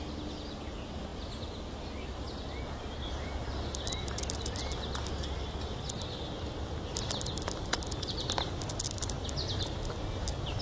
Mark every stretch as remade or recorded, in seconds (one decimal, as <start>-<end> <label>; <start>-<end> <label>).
0.0-10.6 recorded